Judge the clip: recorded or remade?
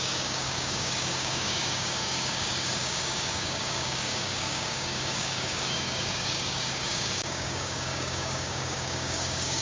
remade